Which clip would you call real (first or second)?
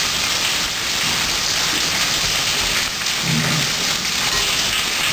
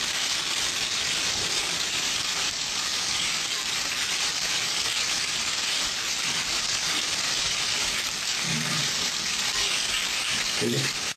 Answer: first